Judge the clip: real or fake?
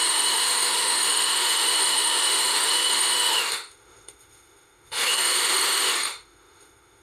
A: fake